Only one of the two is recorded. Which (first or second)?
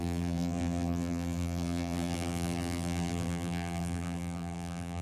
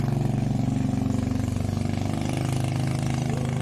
second